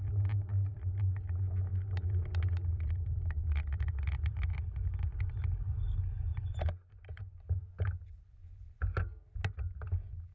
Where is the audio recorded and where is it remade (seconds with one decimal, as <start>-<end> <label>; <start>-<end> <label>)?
0.0-3.4 recorded; 3.4-4.6 remade; 4.6-6.3 recorded; 6.3-8.8 remade; 8.8-10.3 recorded